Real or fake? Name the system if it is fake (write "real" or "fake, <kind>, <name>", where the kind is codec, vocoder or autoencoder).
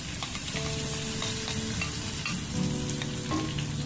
real